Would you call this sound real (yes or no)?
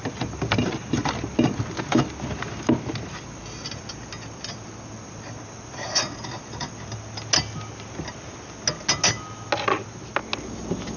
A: yes